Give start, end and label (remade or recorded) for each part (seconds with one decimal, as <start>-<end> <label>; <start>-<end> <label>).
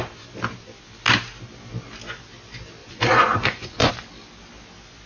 0.0-2.8 recorded; 2.8-3.9 remade; 3.9-5.1 recorded